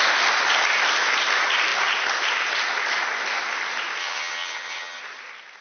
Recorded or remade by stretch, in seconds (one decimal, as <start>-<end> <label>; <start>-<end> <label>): 0.0-4.0 recorded; 4.0-5.0 remade; 5.0-5.6 recorded